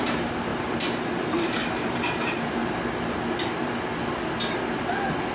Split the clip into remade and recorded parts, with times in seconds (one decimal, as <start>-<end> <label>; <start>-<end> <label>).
0.0-2.6 remade; 2.6-5.3 recorded